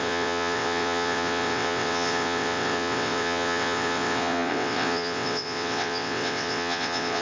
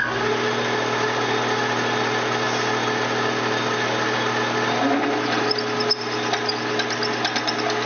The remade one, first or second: first